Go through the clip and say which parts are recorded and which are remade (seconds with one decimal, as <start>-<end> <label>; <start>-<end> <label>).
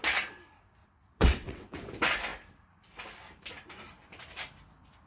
0.0-0.8 recorded; 0.8-1.8 remade; 1.8-5.1 recorded